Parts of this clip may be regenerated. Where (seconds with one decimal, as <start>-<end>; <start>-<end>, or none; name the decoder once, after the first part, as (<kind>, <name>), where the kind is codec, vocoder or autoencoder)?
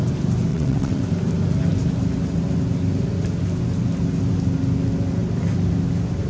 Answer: 0.5-1.0 (vocoder, WaveNeXt)